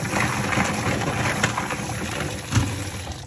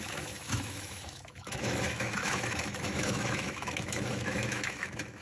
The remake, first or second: second